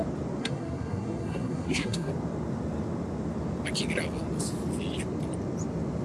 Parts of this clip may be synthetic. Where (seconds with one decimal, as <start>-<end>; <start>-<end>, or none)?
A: 0.4-2.1